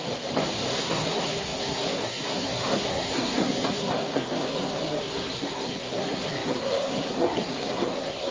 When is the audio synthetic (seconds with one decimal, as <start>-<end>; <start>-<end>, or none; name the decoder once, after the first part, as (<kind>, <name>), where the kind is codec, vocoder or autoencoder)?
0.7-8.3 (codec, SNAC)